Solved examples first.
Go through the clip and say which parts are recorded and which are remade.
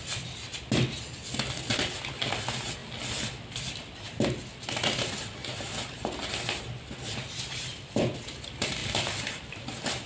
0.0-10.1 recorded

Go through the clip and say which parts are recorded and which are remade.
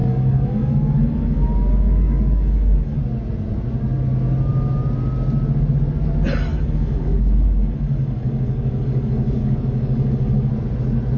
0.0-3.0 remade; 3.0-6.5 recorded; 6.5-10.5 remade; 10.5-11.2 recorded